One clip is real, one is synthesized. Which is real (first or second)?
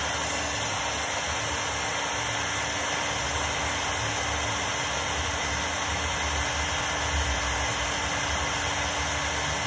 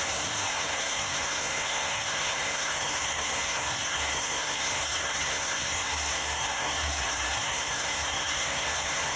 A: first